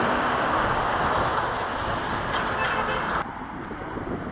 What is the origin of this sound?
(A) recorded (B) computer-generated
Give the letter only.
A